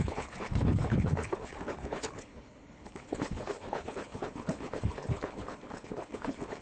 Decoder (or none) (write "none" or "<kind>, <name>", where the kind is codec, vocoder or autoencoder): codec, HILCodec